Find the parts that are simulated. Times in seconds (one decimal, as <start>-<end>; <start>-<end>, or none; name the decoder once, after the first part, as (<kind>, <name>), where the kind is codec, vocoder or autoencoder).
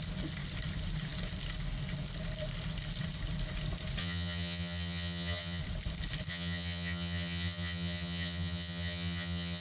4.0-5.6 (vocoder, HiFi-GAN); 6.3-9.6